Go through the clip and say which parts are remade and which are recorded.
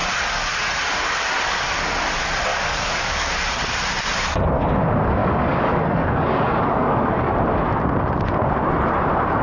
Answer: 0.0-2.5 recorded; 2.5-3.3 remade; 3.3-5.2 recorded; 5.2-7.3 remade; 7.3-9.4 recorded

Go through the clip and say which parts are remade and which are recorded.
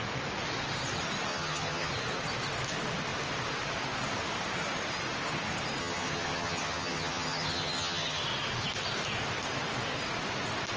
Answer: 0.0-1.3 recorded; 1.3-1.9 remade; 1.9-5.8 recorded; 5.8-8.2 remade; 8.2-10.8 recorded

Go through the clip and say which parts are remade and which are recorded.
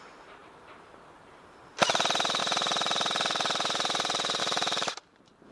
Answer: 0.0-5.5 remade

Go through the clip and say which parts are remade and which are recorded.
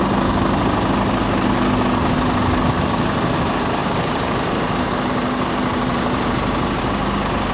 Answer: 0.0-3.8 recorded; 3.8-4.9 remade; 4.9-5.9 recorded; 5.9-6.8 remade; 6.8-7.5 recorded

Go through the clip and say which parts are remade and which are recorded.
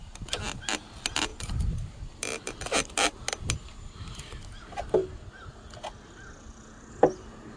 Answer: 0.0-7.6 recorded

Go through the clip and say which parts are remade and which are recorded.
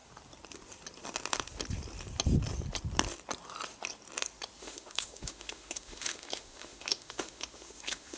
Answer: 0.0-4.6 recorded; 4.6-8.2 remade